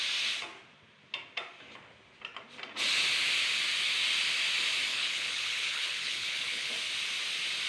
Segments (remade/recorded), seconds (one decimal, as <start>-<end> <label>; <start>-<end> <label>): 0.0-4.9 recorded; 4.9-6.7 remade; 6.7-7.7 recorded